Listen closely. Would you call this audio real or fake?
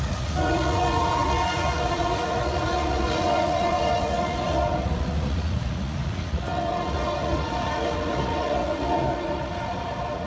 fake